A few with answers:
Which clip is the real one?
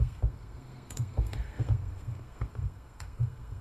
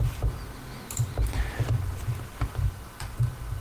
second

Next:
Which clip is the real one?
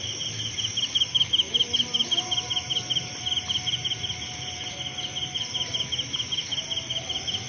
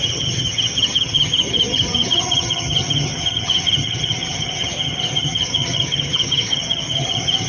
first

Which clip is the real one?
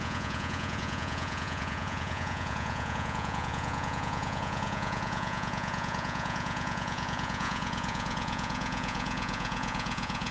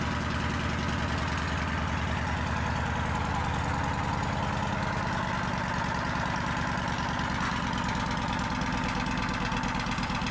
second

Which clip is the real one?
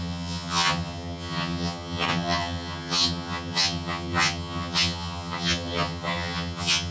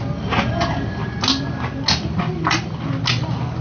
second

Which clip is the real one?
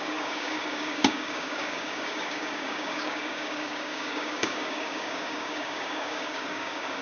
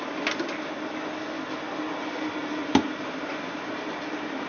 second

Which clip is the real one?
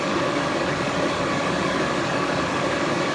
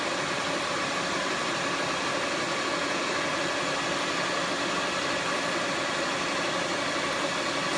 second